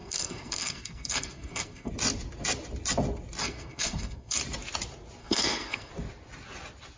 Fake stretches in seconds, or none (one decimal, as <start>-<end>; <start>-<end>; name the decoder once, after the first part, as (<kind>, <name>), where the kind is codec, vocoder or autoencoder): 0.0-1.9 (codec, SNAC); 3.4-4.4; 5.2-5.9